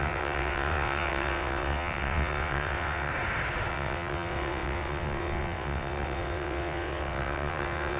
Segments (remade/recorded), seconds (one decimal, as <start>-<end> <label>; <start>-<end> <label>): 0.0-3.1 remade; 3.1-3.7 recorded; 3.7-8.0 remade